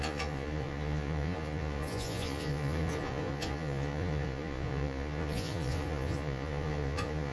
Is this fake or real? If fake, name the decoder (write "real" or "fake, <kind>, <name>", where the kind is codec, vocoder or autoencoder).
fake, vocoder, Vocos